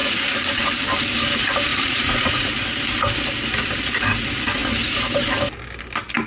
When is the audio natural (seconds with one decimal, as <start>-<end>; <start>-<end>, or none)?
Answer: 0.7-1.7; 2.5-6.3